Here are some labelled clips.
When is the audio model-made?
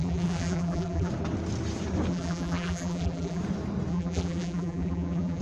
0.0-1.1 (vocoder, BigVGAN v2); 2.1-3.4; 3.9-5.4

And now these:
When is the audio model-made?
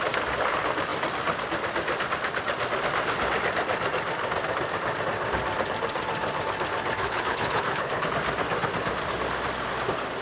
7.0-8.1 (codec, HILCodec)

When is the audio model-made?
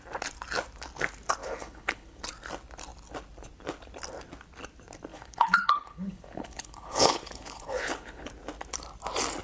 1.4-2.2 (codec, HILCodec); 5.1-8.3